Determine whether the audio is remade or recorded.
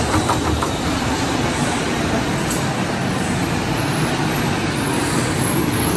recorded